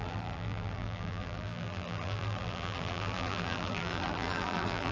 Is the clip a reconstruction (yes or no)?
yes